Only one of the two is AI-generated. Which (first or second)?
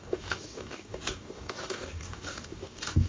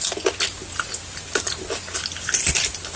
first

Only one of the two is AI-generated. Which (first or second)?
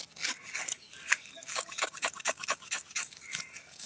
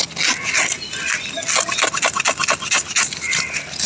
first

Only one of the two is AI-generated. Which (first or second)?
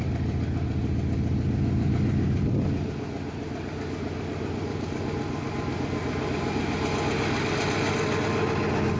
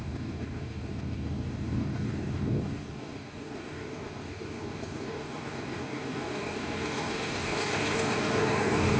second